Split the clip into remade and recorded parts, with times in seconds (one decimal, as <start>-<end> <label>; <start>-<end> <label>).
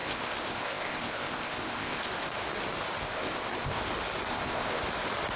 0.0-2.1 remade; 2.1-3.0 recorded; 3.0-3.8 remade; 3.8-4.3 recorded; 4.3-4.8 remade; 4.8-5.4 recorded